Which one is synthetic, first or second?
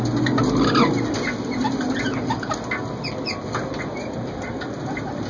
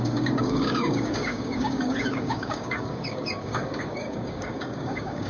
second